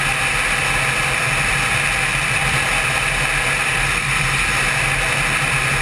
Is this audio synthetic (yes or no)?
no